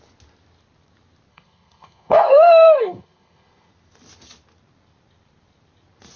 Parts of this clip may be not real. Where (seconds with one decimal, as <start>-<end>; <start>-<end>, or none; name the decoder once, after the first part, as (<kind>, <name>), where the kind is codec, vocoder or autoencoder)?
1.3-3.7 (codec, SNAC)